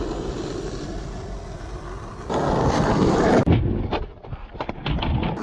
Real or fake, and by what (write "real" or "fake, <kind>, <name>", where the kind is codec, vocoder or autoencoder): real